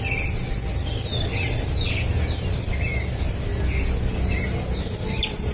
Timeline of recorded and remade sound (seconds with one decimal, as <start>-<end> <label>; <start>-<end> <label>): 0.0-5.5 recorded